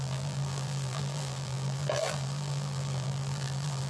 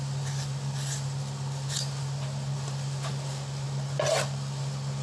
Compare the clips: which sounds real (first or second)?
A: second